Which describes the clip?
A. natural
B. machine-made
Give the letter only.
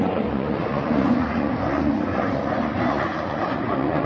B